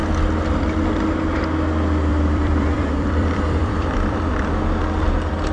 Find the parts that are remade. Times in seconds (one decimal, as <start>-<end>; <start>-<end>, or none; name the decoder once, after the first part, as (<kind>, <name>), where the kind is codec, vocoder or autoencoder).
2.1-4.5 (vocoder, BigVGAN v2)